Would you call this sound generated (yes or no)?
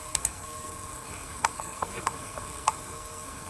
yes